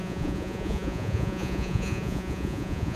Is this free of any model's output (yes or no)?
no